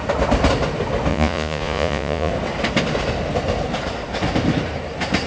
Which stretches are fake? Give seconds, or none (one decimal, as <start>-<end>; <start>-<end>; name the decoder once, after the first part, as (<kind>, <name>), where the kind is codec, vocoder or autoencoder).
1.1-2.3 (vocoder, Vocos)